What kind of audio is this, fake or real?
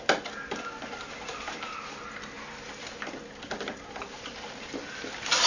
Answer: real